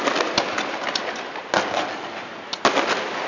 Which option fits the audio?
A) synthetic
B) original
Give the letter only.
B